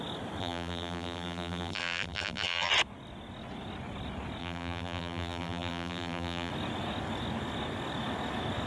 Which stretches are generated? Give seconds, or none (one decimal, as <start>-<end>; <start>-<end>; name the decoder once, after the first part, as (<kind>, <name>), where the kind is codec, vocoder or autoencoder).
0.4-2.7 (vocoder, BigVGAN v2); 4.4-6.5